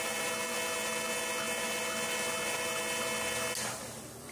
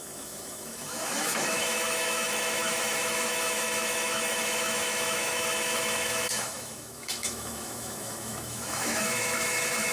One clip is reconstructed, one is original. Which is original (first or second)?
first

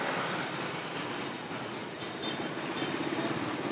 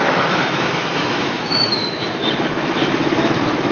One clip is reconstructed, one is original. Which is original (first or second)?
first